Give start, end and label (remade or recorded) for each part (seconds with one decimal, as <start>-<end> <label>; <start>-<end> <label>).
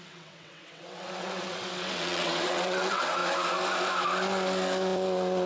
0.0-3.2 remade; 3.2-5.5 recorded